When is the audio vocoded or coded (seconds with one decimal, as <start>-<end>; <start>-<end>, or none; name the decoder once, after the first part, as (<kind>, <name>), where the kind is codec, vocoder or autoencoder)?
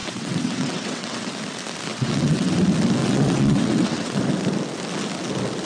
0.0-1.3 (vocoder, WaveNeXt); 1.9-2.5; 3.0-4.2